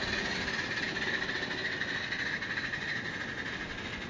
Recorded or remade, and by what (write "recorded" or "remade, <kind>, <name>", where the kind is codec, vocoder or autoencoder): recorded